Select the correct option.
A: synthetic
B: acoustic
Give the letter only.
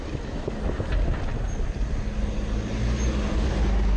B